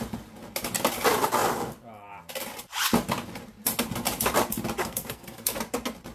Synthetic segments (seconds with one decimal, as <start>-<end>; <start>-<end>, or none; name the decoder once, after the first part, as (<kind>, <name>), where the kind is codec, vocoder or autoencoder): 4.8-5.6 (codec, SNAC)